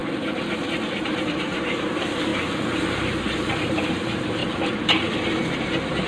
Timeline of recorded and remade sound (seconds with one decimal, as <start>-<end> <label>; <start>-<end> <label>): 0.0-1.0 recorded; 1.0-4.4 remade; 4.4-5.6 recorded; 5.6-6.1 remade